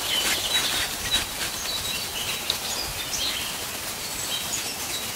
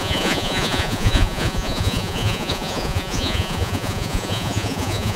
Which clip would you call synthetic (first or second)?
second